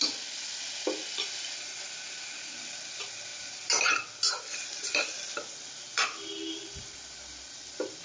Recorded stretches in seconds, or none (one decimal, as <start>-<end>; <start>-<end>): 0.0-8.0